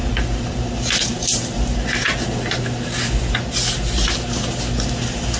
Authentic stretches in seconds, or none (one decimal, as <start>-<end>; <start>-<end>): 0.0-5.4